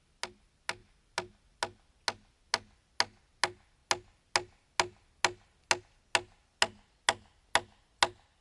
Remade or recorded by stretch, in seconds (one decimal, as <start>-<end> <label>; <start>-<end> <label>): 0.0-8.4 recorded